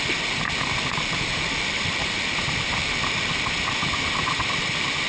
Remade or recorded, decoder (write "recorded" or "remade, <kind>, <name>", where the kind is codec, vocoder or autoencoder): remade, vocoder, BigVGAN v2